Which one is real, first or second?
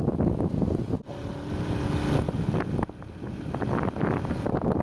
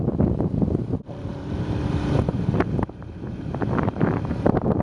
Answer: first